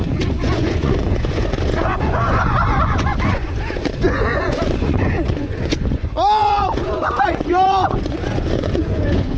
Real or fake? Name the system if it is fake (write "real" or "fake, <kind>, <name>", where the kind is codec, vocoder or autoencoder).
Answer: fake, vocoder, Vocos